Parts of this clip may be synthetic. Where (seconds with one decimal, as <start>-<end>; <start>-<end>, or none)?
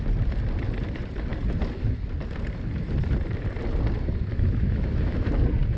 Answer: 4.3-5.3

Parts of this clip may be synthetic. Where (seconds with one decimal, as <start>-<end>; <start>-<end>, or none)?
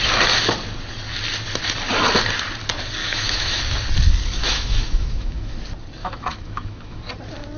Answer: 3.0-3.6; 4.4-5.5; 6.0-7.0